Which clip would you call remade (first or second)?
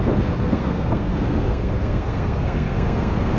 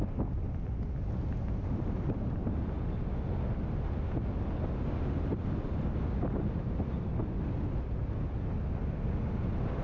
first